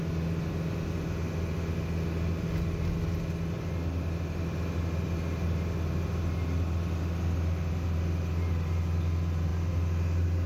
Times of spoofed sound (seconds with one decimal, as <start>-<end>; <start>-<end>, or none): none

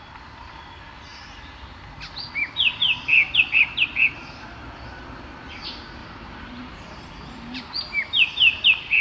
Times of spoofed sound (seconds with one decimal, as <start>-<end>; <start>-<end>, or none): 3.2-3.9; 6.0-7.1

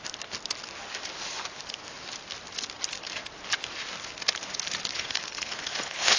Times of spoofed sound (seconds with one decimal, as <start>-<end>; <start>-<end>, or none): 4.9-6.2

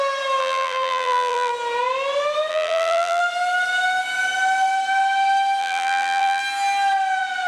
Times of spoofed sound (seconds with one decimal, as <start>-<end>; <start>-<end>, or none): 0.4-1.5; 2.5-3.2; 5.6-6.4

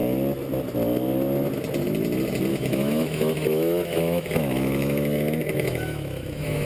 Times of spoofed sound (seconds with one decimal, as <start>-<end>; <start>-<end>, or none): 2.5-6.7

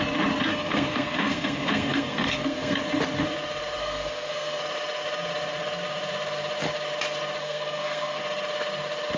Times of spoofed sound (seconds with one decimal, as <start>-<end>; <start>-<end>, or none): 0.5-2.8; 3.8-4.6; 7.4-8.2

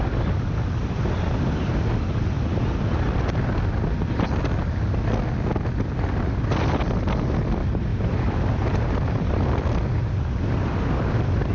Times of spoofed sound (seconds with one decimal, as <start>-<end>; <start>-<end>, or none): 7.9-8.5

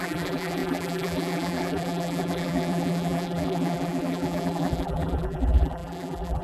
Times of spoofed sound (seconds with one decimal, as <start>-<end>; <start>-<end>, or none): 0.0-6.4